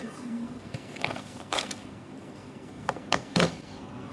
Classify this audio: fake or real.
fake